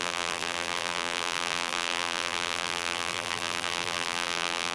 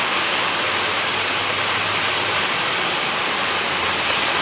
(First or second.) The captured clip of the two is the second